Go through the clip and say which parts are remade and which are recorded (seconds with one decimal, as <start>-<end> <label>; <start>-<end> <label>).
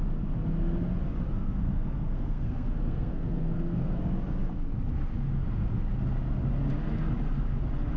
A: 0.0-1.3 recorded; 1.3-4.0 remade; 4.0-8.0 recorded